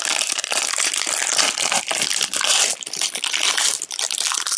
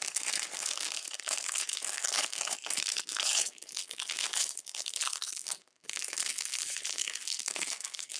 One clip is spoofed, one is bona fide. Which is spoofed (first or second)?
second